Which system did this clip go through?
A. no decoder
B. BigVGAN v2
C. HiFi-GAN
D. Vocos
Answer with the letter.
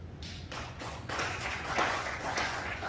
D